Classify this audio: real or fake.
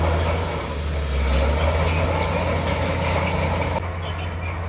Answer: real